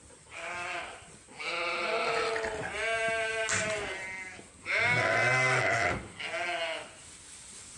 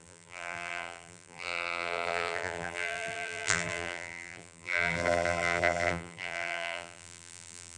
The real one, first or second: first